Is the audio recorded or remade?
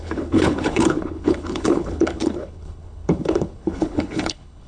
remade